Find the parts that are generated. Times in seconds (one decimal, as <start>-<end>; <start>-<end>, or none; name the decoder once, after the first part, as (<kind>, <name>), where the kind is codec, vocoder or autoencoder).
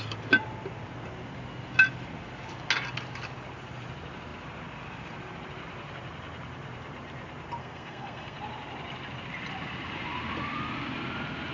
7.6-8.4 (codec, SNAC)